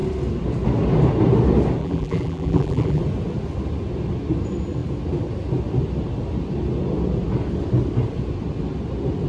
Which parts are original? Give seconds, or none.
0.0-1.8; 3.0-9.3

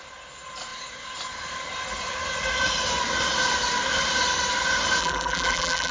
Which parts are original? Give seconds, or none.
0.0-5.0

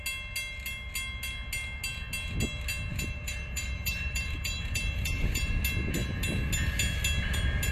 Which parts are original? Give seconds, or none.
0.0-2.9; 5.6-7.7